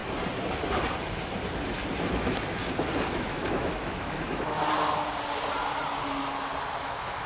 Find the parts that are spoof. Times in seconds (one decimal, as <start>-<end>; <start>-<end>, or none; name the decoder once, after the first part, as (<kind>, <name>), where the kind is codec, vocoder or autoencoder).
2.1-2.6 (autoencoder, DAC-VAE); 3.1-4.6; 6.7-7.3